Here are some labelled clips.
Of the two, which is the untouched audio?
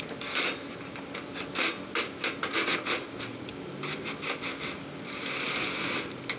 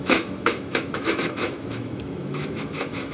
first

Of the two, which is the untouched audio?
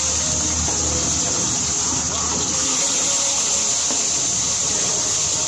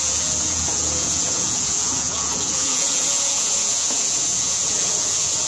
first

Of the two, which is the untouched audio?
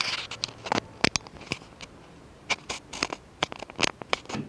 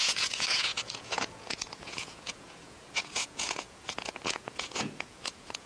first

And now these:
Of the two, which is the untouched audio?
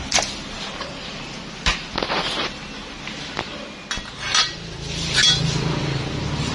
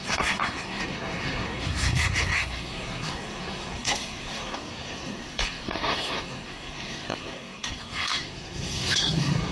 first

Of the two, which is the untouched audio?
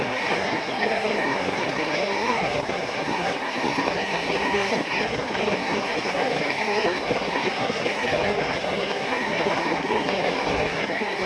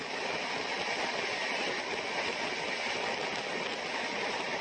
second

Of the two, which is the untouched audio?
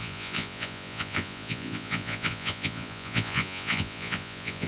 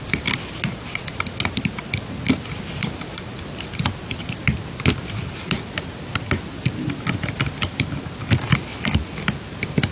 second